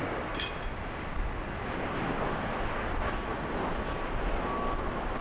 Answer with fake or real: real